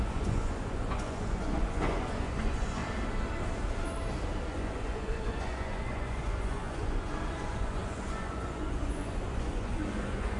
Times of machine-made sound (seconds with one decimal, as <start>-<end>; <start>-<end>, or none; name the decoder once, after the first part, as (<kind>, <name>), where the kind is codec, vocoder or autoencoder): 0.0-2.8 (vocoder, Vocos); 4.5-10.4